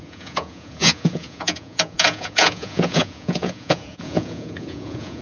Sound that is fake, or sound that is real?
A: fake